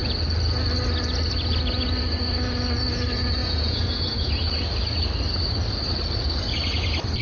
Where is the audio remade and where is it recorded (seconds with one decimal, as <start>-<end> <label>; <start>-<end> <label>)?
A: 0.0-3.4 recorded; 3.4-4.3 remade; 4.3-7.2 recorded